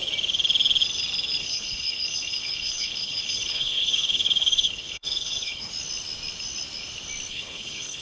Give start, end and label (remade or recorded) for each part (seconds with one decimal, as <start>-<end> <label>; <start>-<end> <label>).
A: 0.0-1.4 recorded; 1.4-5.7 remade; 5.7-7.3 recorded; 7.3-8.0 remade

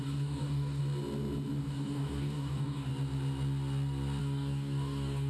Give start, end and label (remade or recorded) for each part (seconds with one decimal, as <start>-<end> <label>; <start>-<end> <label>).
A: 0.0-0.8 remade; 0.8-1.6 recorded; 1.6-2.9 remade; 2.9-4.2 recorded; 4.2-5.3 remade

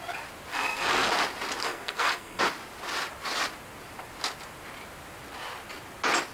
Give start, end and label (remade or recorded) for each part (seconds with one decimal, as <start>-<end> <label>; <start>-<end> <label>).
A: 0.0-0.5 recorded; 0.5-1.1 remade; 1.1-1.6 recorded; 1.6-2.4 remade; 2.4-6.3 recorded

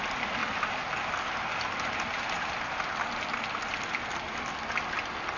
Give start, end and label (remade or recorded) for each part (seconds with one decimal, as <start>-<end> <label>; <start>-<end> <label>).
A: 0.0-5.4 recorded

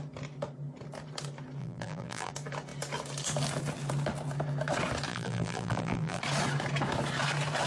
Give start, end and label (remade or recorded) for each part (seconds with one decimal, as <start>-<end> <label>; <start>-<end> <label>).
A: 0.0-1.6 recorded; 1.6-2.3 remade; 2.3-5.1 recorded; 5.1-6.2 remade; 6.2-7.7 recorded

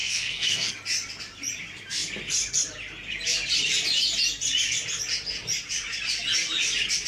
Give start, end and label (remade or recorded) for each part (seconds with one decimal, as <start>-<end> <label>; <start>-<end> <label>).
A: 0.0-0.7 remade; 0.7-7.1 recorded